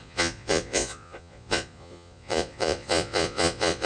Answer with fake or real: fake